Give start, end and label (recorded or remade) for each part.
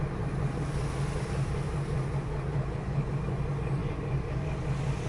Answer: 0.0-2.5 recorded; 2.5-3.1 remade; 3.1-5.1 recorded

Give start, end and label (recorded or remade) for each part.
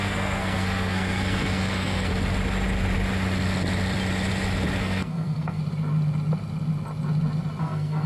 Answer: 0.0-2.1 remade; 2.1-4.8 recorded; 4.8-5.6 remade; 5.6-7.6 recorded; 7.6-8.1 remade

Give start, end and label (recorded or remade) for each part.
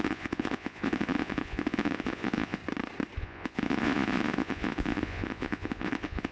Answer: 0.0-2.6 remade; 2.6-3.2 recorded; 3.2-6.3 remade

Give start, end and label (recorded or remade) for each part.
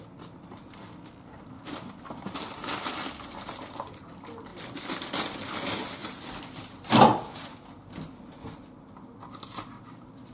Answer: 0.0-4.5 recorded; 4.5-5.5 remade; 5.5-6.0 recorded; 6.0-6.6 remade; 6.6-10.3 recorded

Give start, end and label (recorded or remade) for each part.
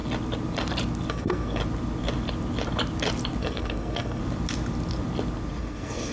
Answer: 0.0-1.1 recorded; 1.1-1.6 remade; 1.6-3.4 recorded; 3.4-4.2 remade; 4.2-5.6 recorded; 5.6-6.1 remade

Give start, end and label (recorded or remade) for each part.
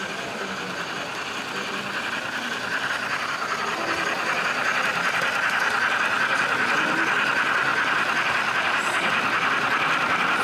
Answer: 0.0-10.4 recorded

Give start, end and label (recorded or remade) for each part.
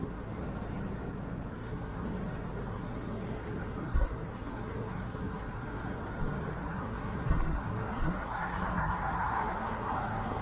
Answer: 0.0-0.4 remade; 0.4-1.5 recorded; 1.5-2.1 remade; 2.1-2.7 recorded; 2.7-6.0 remade; 6.0-6.6 recorded; 6.6-10.4 remade